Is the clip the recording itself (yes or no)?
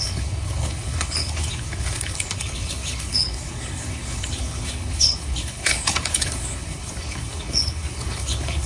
no